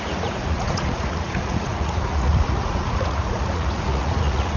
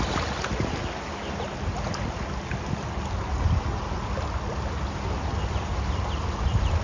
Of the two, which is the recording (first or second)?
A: second